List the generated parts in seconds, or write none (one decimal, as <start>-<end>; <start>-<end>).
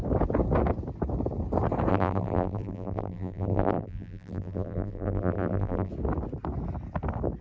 1.9-5.9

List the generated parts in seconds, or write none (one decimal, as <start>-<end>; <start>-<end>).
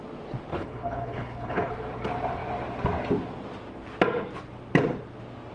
0.5-1.7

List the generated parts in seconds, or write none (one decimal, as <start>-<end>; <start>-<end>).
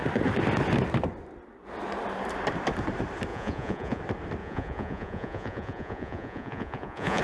3.3-4.0; 4.4-7.2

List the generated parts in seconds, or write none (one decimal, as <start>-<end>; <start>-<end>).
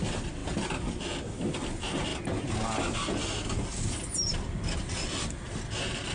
none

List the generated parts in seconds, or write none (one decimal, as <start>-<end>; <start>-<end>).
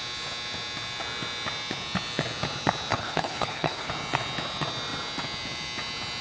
2.9-3.9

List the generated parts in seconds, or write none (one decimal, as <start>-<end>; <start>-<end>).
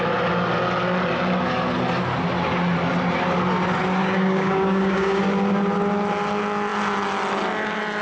4.0-5.2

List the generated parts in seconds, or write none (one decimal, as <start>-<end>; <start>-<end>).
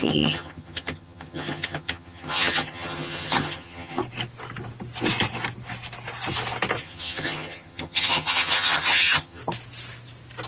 0.0-4.0; 6.8-9.4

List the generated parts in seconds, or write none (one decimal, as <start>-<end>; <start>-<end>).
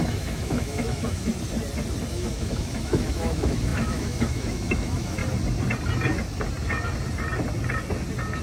0.0-1.3; 2.1-5.2